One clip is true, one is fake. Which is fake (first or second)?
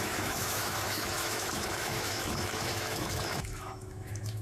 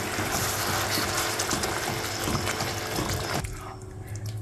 first